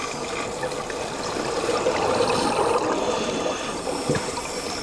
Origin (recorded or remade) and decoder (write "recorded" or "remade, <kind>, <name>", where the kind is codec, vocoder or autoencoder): recorded